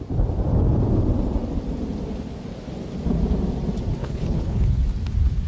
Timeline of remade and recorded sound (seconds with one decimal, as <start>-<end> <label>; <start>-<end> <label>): 0.0-4.0 recorded; 4.0-4.8 remade; 4.8-5.5 recorded